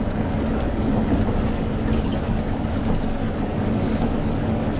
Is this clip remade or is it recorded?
remade